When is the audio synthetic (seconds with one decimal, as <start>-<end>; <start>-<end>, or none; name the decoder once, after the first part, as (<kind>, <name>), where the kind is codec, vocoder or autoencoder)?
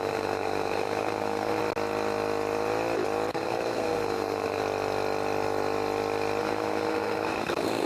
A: 0.0-1.6 (codec, SNAC); 3.3-4.6; 6.4-7.9